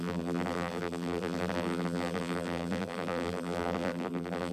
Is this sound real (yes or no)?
no